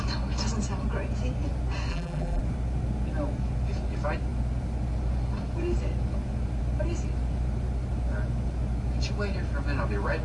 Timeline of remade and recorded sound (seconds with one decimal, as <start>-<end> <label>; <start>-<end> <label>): 0.0-1.9 recorded; 1.9-2.4 remade; 2.4-10.2 recorded